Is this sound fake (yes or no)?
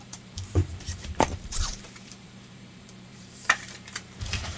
yes